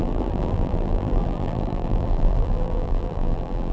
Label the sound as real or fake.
fake